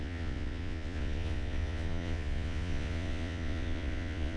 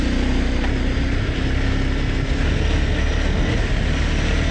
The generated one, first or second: first